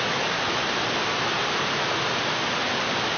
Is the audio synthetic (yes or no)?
no